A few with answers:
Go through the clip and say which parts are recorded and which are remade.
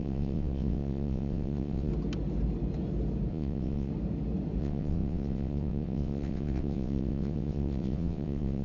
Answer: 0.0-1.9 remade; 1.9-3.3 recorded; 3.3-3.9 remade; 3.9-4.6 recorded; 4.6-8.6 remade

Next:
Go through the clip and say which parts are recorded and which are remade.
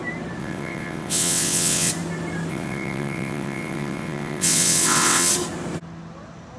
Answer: 0.0-0.4 recorded; 0.4-1.9 remade; 1.9-2.5 recorded; 2.5-5.3 remade; 5.3-6.6 recorded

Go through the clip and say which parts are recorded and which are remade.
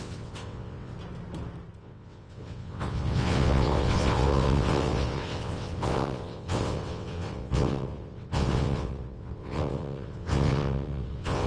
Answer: 0.0-0.9 remade; 0.9-1.8 recorded; 1.8-11.5 remade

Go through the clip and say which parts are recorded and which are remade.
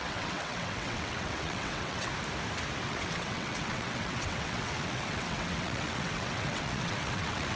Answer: 0.0-2.1 remade; 2.1-2.8 recorded; 2.8-7.6 remade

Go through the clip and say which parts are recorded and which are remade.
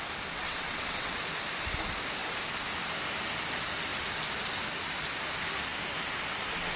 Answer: 0.0-0.4 recorded; 0.4-1.2 remade; 1.2-6.8 recorded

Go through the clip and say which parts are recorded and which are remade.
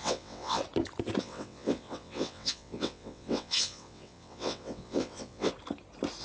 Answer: 0.0-0.6 remade; 0.6-1.2 recorded; 1.2-5.5 remade; 5.5-6.2 recorded